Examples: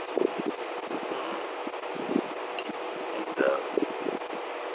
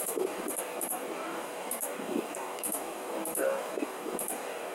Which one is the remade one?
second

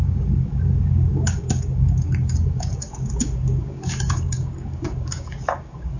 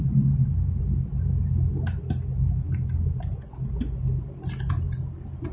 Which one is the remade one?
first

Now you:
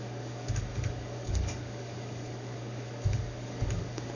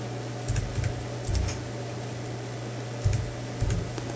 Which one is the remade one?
first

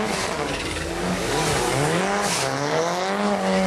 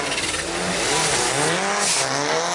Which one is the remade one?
first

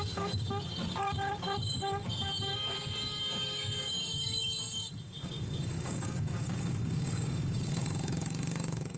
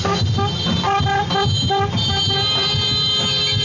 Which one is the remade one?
first